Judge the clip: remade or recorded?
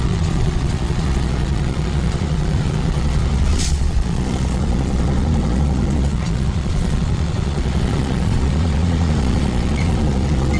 remade